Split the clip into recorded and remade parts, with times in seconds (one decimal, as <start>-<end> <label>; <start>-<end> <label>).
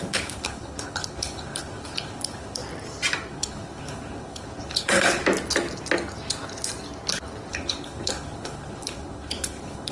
0.0-2.6 remade; 2.6-3.3 recorded; 3.3-5.2 remade; 5.2-7.5 recorded; 7.5-9.9 remade